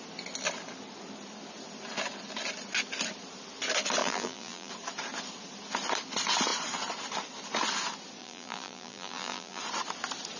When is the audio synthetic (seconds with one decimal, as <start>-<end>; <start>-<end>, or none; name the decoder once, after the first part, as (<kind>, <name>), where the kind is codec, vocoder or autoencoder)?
4.0-4.7 (vocoder, BigVGAN v2); 8.2-9.6